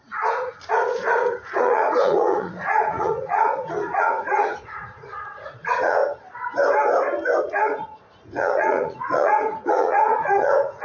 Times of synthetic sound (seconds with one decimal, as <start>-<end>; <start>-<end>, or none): 0.0-6.0; 7.4-10.8